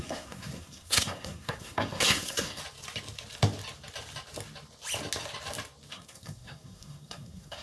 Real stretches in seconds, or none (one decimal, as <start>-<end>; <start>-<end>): 2.6-5.9